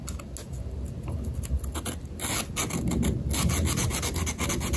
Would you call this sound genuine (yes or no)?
yes